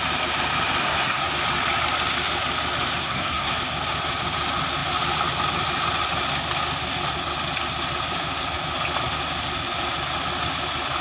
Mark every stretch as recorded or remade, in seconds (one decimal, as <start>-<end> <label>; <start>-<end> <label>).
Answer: 0.0-0.8 recorded; 0.8-1.3 remade; 1.3-3.0 recorded; 3.0-3.5 remade; 3.5-11.0 recorded